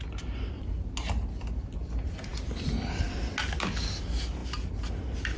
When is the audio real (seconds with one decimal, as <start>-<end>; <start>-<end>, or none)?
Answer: 0.0-5.4